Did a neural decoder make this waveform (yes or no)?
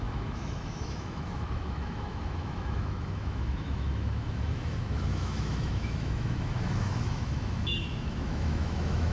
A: yes